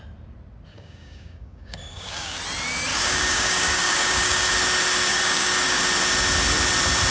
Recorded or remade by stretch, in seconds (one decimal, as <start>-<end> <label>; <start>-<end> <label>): 0.0-0.7 recorded; 0.7-2.4 remade; 2.4-2.9 recorded; 2.9-4.5 remade; 4.5-5.1 recorded; 5.1-5.8 remade; 5.8-7.1 recorded